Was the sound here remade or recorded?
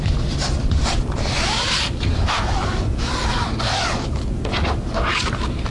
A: recorded